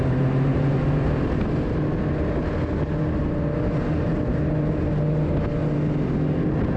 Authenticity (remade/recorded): recorded